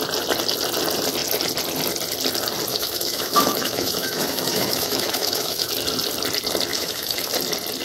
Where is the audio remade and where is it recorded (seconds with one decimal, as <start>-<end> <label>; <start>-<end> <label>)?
0.0-2.7 recorded; 2.7-5.7 remade; 5.7-6.7 recorded; 6.7-7.3 remade; 7.3-7.8 recorded